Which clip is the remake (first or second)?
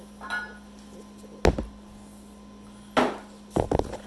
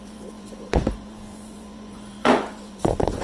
second